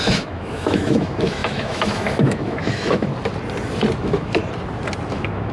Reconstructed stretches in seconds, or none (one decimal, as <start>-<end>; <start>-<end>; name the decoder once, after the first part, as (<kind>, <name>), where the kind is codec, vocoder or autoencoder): 0.0-3.1 (autoencoder, DAC-VAE); 4.0-4.4; 5.1-5.5